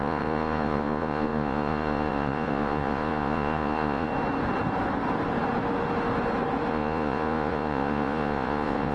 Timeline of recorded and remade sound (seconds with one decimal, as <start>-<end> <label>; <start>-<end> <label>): 0.0-4.1 remade; 4.1-6.7 recorded; 6.7-8.9 remade